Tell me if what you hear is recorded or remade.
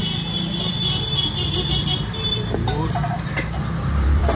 remade